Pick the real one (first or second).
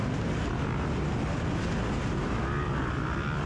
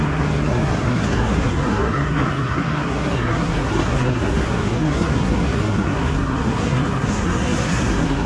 first